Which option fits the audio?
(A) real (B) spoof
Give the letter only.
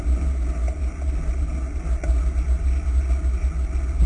A